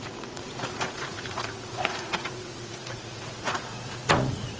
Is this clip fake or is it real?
fake